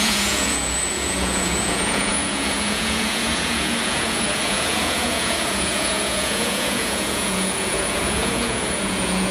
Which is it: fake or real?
fake